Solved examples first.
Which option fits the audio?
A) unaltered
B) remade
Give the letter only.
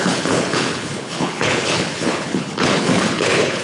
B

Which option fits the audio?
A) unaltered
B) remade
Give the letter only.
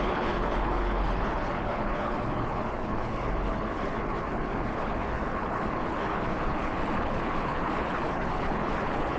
B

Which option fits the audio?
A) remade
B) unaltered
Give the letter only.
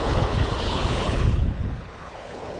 A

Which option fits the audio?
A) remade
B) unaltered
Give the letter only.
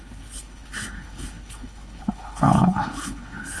A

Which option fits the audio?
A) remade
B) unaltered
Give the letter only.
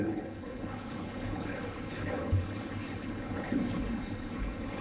A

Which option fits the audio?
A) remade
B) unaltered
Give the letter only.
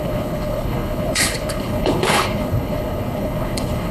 A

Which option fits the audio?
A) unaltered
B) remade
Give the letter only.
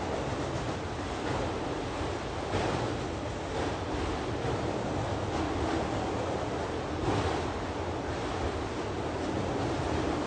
A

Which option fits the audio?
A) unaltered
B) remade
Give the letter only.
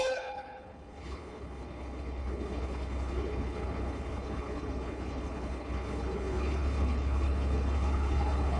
B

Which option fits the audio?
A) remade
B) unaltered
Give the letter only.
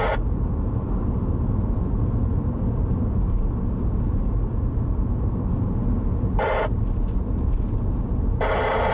B